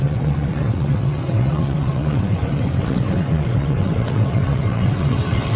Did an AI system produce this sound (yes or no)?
yes